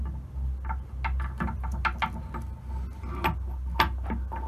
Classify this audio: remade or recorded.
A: recorded